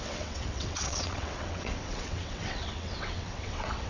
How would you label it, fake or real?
fake